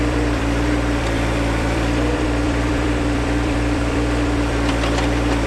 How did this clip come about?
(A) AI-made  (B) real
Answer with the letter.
A